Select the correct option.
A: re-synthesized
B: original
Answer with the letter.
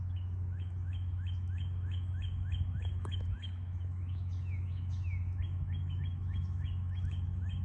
A